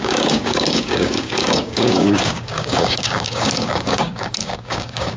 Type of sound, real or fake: fake